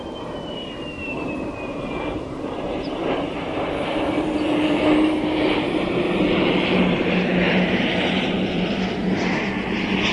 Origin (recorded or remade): remade